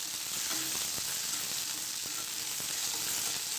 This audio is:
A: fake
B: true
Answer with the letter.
B